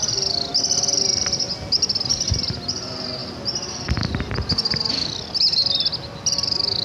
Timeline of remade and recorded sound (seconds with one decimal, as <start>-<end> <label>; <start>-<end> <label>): 0.0-6.8 recorded